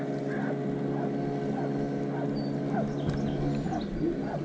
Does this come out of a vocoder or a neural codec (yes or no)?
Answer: no